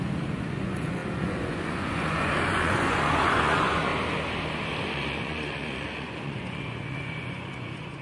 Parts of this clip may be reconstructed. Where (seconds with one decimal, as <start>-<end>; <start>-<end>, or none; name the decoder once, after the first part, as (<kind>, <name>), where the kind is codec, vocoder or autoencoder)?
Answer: 0.0-3.9 (vocoder, Vocos); 4.8-8.0